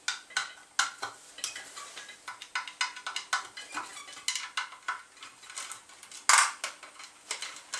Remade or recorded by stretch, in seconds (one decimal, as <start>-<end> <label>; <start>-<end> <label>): 0.0-7.8 recorded